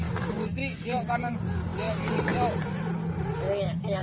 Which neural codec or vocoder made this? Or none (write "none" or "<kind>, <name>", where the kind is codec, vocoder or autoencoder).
none